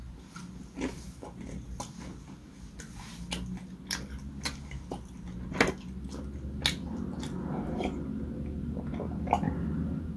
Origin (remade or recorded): recorded